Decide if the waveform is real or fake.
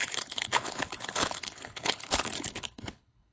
fake